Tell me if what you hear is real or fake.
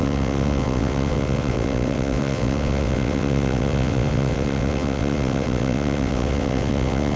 fake